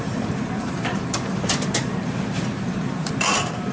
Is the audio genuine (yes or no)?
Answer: no